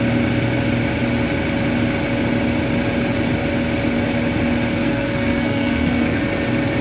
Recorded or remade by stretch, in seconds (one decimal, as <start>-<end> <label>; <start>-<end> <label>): 0.0-4.7 recorded; 4.7-6.2 remade; 6.2-6.8 recorded